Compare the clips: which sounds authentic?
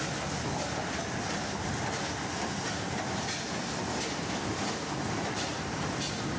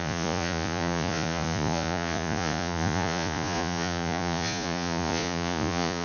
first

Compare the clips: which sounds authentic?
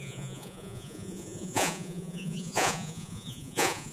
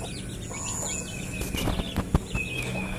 second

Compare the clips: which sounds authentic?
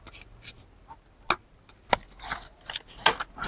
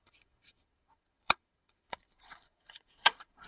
first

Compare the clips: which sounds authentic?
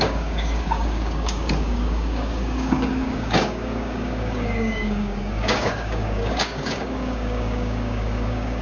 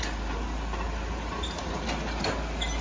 second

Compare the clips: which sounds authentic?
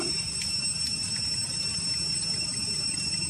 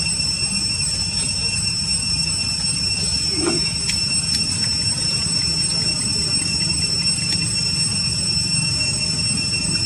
second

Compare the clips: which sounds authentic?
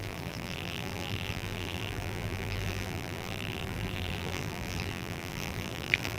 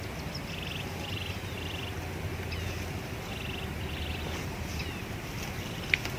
second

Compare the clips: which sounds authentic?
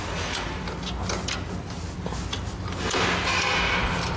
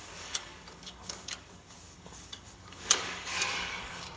first